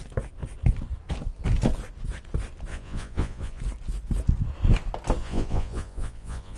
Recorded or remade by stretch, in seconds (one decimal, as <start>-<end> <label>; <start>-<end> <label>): 0.0-2.7 recorded; 2.7-3.6 remade; 3.6-5.2 recorded; 5.2-6.6 remade